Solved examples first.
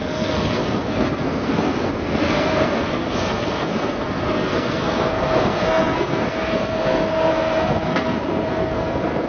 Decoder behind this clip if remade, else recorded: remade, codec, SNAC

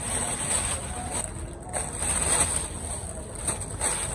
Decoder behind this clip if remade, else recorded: recorded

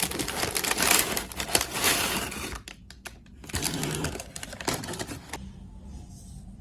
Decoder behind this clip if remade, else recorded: recorded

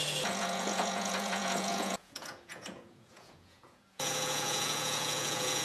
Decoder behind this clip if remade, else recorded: remade, vocoder, Vocos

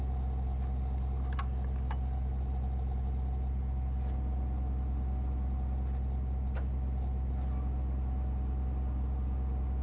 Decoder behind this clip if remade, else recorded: recorded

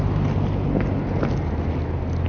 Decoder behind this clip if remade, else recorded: recorded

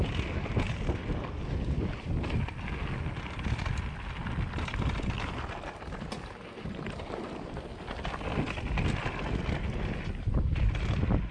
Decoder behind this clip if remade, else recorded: recorded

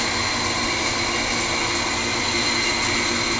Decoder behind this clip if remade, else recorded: recorded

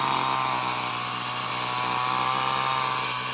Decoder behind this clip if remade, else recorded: recorded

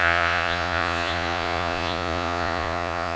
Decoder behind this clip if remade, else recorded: remade, vocoder, Vocos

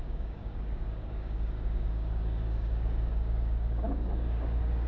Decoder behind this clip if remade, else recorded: remade, codec, DAC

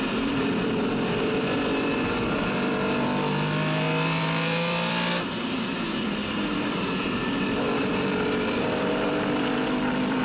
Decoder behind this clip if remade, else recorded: remade, vocoder, BigVGAN v2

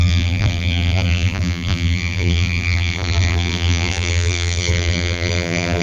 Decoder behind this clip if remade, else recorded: remade, vocoder, BigVGAN v2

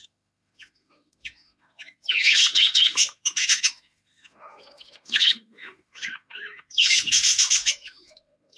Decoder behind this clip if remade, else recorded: remade, autoencoder, DAC-VAE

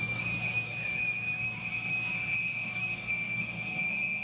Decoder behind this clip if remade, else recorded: remade, codec, DAC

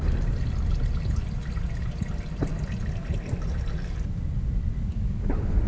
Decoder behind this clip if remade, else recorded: recorded